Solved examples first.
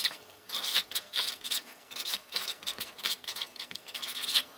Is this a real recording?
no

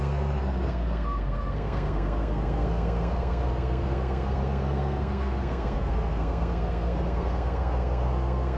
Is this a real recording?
no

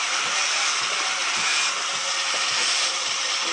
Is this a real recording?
yes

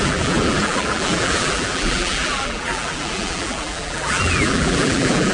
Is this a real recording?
no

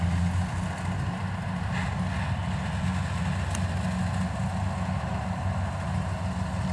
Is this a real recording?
yes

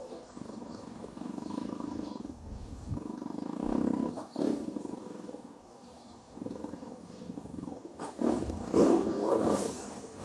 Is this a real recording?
no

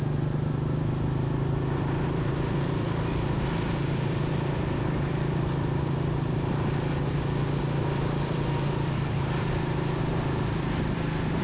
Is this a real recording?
yes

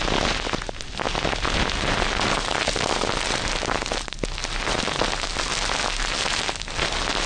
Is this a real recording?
yes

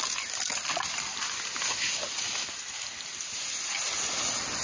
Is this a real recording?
yes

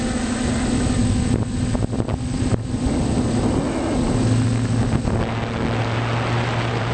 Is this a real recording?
yes